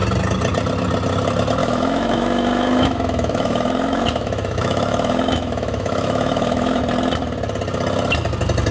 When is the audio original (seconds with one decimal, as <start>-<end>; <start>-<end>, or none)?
0.0-1.6; 6.8-8.7